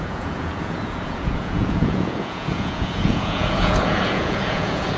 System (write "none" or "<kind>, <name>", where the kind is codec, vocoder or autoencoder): vocoder, Vocos